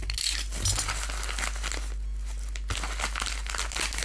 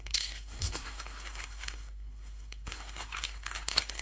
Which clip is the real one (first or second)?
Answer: first